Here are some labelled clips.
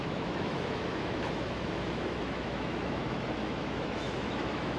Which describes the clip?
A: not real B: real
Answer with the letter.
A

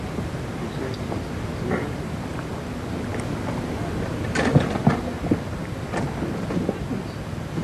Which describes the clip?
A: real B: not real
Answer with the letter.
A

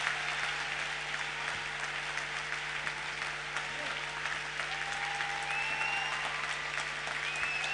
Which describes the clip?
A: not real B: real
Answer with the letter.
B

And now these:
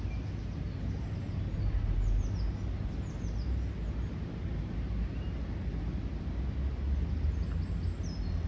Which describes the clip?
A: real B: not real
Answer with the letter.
A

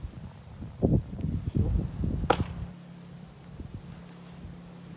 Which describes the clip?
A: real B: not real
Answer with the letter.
A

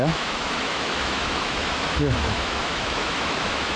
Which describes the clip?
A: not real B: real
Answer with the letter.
A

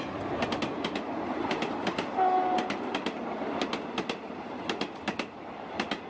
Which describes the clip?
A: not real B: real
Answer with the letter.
B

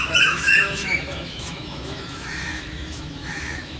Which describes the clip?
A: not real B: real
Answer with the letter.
A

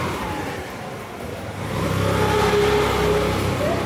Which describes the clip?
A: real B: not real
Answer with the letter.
A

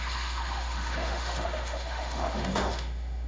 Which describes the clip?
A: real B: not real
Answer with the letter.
B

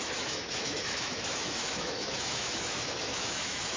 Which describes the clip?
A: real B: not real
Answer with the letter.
B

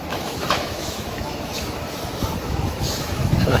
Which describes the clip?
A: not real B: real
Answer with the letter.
A